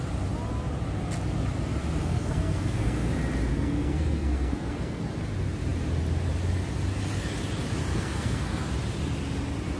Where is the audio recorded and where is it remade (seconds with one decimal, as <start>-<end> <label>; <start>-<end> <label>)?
0.0-2.0 recorded; 2.0-3.1 remade; 3.1-3.5 recorded; 3.5-5.0 remade; 5.0-7.9 recorded; 7.9-8.7 remade; 8.7-9.8 recorded